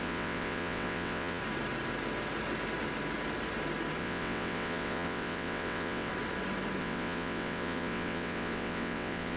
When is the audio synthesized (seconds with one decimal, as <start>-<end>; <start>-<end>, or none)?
0.0-1.4; 4.0-6.1; 6.8-9.4